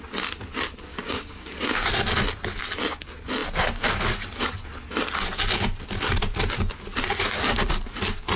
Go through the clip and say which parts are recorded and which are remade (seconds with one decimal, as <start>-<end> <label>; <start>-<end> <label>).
0.0-0.9 recorded; 0.9-1.9 remade; 1.9-8.4 recorded